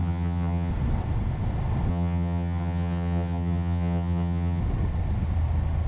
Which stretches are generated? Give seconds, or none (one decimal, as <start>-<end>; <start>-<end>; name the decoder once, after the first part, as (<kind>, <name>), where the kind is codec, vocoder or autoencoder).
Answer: 0.0-0.7 (vocoder, HiFi-GAN); 1.9-4.6